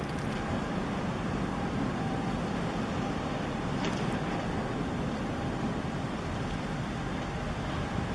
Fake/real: fake